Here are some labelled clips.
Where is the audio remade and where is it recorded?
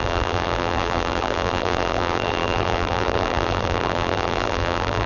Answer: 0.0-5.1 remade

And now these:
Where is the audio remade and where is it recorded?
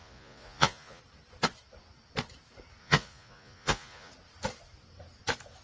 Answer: 0.0-1.0 remade; 1.0-2.8 recorded; 2.8-4.1 remade; 4.1-5.6 recorded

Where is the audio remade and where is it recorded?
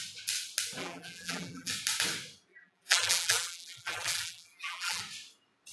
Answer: 0.0-0.8 recorded; 0.8-1.7 remade; 1.7-2.5 recorded; 2.5-5.0 remade; 5.0-5.7 recorded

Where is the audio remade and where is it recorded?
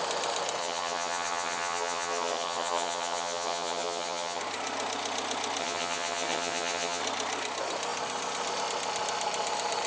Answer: 0.0-0.6 recorded; 0.6-4.4 remade; 4.4-5.6 recorded; 5.6-7.0 remade; 7.0-9.9 recorded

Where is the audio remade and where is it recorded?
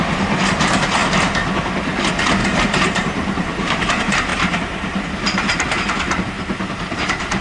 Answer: 0.0-2.4 recorded; 2.4-3.9 remade; 3.9-4.3 recorded; 4.3-5.1 remade; 5.1-7.4 recorded